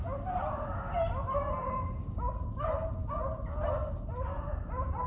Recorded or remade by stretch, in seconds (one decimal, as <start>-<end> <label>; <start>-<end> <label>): 0.0-5.1 recorded